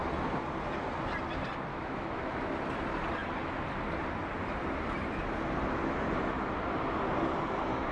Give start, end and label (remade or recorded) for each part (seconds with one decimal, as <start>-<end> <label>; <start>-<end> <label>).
0.0-1.7 recorded; 1.7-2.5 remade; 2.5-7.9 recorded